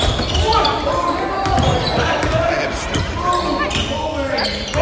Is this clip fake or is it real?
real